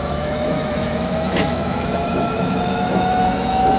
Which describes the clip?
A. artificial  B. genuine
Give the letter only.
A